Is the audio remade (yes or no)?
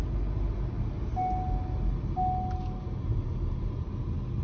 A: no